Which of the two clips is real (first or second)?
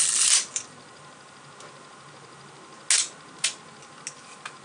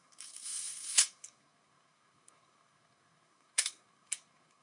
first